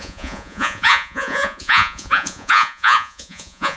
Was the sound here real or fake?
fake